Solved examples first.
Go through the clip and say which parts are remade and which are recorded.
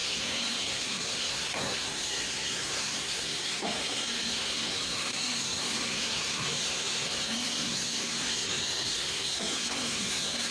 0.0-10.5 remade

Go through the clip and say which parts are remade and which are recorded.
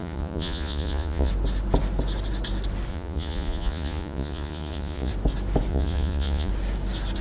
0.0-1.3 remade; 1.3-2.9 recorded; 2.9-5.1 remade; 5.1-5.7 recorded; 5.7-6.5 remade; 6.5-7.2 recorded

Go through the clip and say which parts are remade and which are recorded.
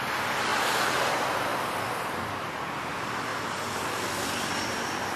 0.0-1.5 recorded; 1.5-2.9 remade; 2.9-3.3 recorded; 3.3-5.2 remade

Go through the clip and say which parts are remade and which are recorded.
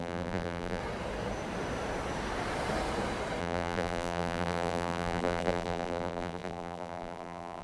0.0-0.8 remade; 0.8-3.4 recorded; 3.4-7.6 remade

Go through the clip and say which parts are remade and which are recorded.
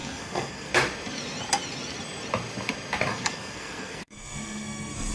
0.0-0.7 remade; 0.7-3.1 recorded; 3.1-5.1 remade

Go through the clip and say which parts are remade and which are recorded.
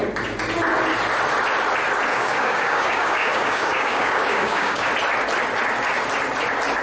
0.0-2.1 recorded; 2.1-4.9 remade; 4.9-6.8 recorded